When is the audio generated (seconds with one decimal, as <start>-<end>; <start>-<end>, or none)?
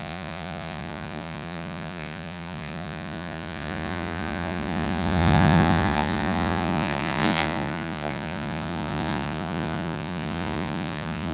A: 0.0-11.3